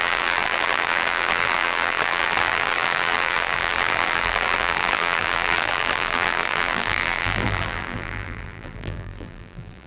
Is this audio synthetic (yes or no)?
yes